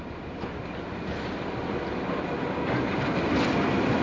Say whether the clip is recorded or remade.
recorded